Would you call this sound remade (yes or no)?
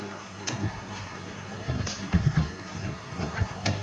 yes